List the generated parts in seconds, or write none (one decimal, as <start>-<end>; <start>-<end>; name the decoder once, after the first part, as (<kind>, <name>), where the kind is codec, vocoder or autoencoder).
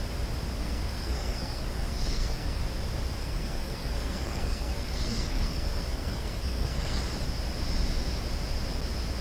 0.6-2.6 (codec, SNAC); 3.2-7.0